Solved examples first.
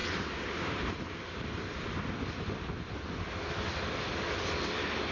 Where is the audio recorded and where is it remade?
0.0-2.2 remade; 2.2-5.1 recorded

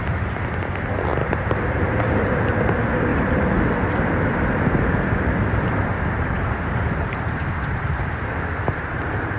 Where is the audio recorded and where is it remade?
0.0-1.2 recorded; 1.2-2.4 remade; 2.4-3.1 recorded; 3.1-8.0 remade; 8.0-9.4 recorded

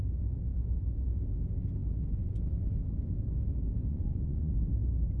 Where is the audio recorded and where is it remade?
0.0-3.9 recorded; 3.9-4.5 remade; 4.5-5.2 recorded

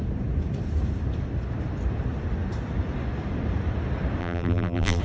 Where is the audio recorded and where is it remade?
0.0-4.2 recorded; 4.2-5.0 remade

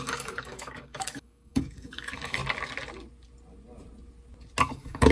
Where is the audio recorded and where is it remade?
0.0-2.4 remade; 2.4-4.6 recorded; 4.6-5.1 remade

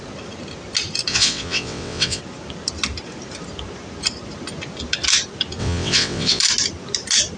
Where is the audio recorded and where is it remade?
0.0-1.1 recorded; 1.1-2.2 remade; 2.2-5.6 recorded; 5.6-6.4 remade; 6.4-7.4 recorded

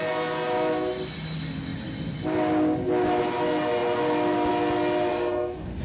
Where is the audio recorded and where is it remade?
0.0-5.1 recorded; 5.1-5.8 remade